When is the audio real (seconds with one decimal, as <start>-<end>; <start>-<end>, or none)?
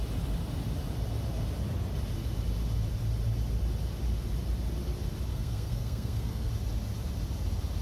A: 0.0-5.3; 6.5-7.8